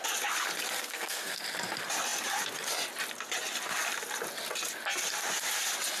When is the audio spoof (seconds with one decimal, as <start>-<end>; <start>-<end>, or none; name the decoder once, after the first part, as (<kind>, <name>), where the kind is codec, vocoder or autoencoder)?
0.8-1.4 (codec, SNAC)